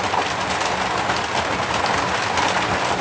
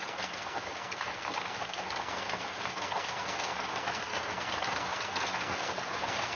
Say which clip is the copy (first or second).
second